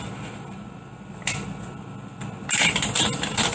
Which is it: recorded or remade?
recorded